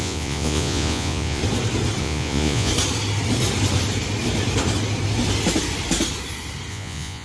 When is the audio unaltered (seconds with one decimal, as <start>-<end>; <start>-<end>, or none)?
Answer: 1.4-2.0; 2.7-6.7